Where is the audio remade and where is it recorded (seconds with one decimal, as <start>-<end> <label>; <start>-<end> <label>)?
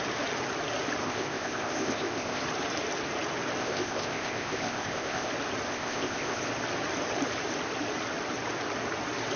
0.0-1.0 recorded; 1.0-2.4 remade; 2.4-3.6 recorded; 3.6-5.3 remade; 5.3-5.7 recorded; 5.7-6.4 remade; 6.4-9.4 recorded